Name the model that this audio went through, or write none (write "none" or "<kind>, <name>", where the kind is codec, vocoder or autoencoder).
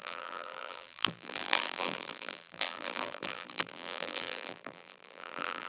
vocoder, BigVGAN v2